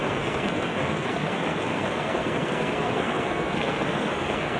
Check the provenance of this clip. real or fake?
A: fake